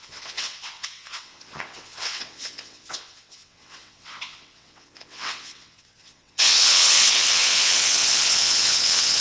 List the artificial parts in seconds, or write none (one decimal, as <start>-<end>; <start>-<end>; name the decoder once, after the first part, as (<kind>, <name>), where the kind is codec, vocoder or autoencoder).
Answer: 0.0-9.2 (vocoder, WaveNeXt)

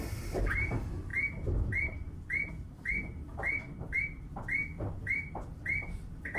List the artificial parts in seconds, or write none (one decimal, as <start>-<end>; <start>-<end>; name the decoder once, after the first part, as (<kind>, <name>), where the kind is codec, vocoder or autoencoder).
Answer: 0.0-6.4 (vocoder, BigVGAN v2)

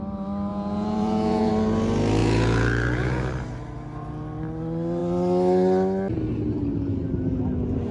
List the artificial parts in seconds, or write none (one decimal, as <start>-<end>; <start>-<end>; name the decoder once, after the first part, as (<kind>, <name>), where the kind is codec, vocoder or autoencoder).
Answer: 0.5-1.5 (vocoder, Vocos); 2.2-3.3

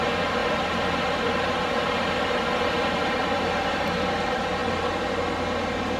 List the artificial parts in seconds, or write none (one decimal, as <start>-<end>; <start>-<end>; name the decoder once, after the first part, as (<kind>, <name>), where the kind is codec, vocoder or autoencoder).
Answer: 0.4-4.0 (vocoder, BigVGAN v2)

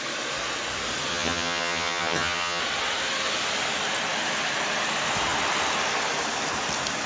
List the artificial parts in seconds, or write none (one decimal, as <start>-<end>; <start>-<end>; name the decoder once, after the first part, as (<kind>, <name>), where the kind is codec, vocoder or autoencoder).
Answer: 1.1-2.6 (vocoder, HiFi-GAN)